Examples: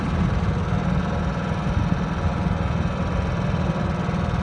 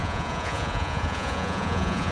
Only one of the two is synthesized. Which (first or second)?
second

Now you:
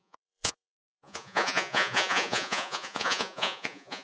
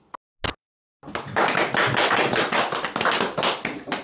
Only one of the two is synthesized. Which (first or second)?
first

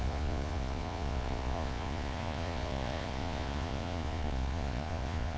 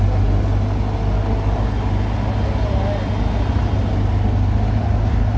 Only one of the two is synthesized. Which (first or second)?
first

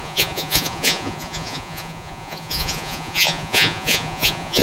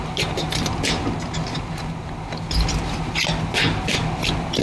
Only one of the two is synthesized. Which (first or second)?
first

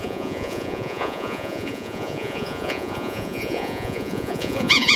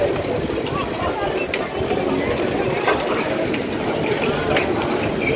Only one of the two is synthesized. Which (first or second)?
first